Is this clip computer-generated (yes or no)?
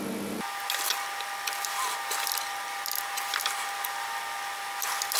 no